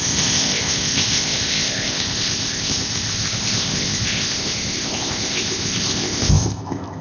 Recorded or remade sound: remade